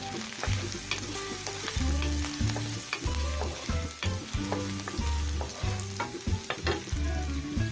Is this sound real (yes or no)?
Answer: yes